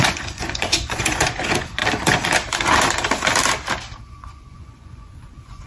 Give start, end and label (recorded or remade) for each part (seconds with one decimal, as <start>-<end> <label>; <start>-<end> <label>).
0.0-1.8 remade; 1.8-4.1 recorded; 4.1-5.7 remade